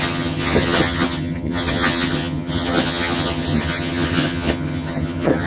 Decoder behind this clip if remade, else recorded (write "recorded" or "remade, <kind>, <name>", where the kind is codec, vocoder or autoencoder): remade, vocoder, HiFi-GAN